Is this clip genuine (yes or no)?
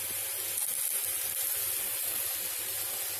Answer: yes